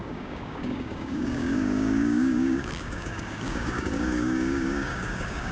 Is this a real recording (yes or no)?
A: no